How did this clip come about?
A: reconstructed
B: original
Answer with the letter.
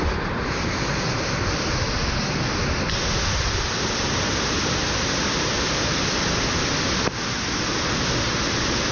B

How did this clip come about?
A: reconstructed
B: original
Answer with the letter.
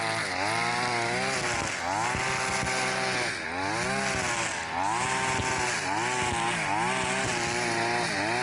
B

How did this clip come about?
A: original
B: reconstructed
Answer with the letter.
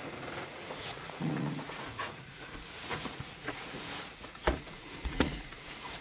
B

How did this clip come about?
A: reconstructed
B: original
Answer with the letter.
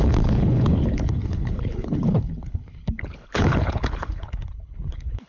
A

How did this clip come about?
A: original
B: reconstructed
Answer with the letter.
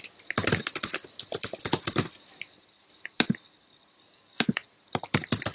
B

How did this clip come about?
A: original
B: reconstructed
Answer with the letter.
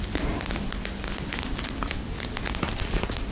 A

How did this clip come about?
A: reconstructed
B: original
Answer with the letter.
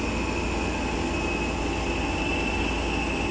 B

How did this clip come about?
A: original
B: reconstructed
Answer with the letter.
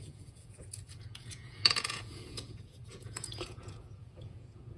B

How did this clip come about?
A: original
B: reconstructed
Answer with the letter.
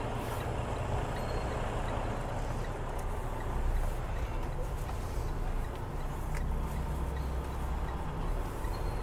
A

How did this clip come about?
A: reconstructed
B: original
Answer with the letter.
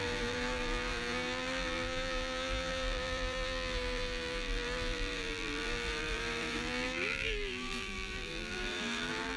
A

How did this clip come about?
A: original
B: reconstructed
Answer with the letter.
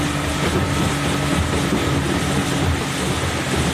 A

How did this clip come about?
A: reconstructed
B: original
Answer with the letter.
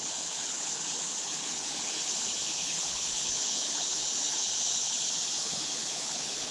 A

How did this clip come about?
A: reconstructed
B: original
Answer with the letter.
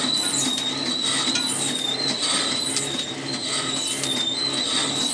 B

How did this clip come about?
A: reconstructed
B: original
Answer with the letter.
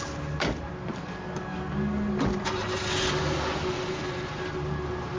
B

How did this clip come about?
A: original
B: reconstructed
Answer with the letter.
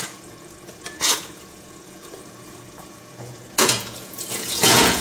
B